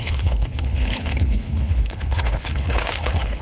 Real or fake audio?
fake